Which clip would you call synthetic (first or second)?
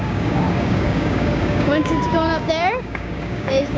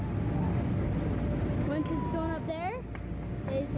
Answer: first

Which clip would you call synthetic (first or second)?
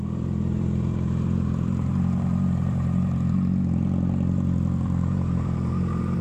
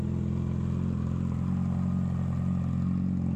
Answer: first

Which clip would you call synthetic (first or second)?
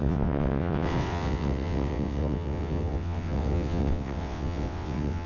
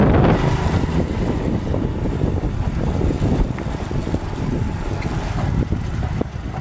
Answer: first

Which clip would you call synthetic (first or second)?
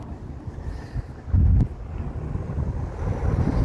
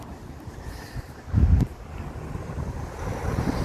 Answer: second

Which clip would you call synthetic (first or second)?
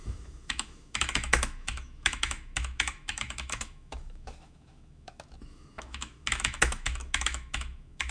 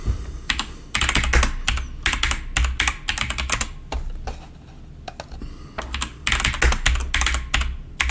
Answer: first